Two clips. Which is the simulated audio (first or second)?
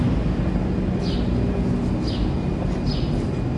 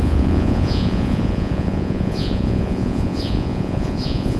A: second